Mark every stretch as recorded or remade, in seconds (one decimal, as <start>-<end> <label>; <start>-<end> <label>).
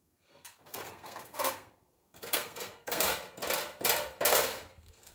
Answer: 0.0-3.1 remade; 3.1-4.3 recorded; 4.3-5.1 remade